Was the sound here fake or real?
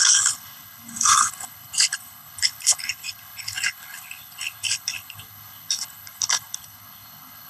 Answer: fake